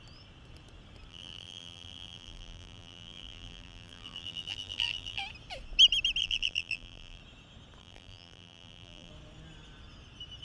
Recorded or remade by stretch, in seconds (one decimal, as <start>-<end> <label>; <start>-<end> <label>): 0.0-1.1 recorded; 1.1-5.2 remade; 5.2-6.2 recorded; 6.2-7.2 remade; 7.2-7.8 recorded; 7.8-9.1 remade; 9.1-10.4 recorded